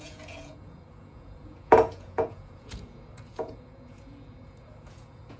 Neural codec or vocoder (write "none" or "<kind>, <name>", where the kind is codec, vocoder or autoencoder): vocoder, Vocos